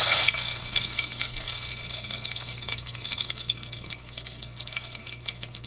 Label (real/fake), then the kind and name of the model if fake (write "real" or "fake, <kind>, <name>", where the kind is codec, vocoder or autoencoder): fake, codec, SNAC